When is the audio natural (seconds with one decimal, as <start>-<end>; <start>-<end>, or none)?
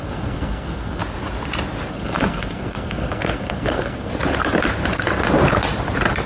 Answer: 1.0-1.9; 4.1-6.3